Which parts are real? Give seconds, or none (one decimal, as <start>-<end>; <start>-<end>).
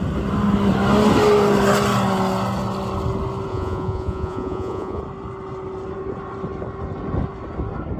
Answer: 0.0-3.5; 5.0-8.0